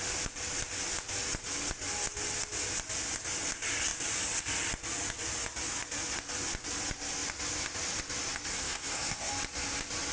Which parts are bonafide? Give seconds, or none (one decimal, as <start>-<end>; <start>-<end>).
0.0-8.5; 9.3-10.1